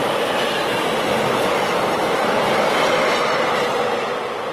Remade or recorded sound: recorded